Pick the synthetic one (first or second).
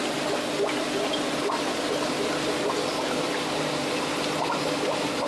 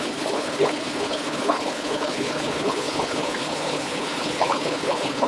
second